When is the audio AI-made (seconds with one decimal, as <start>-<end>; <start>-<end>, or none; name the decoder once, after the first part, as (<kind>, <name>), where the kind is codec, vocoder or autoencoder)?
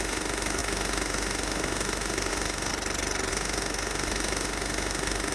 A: 0.0-2.7 (autoencoder, DAC-VAE); 3.3-5.3